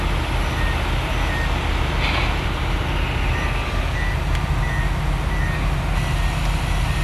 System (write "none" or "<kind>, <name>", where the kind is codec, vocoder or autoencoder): none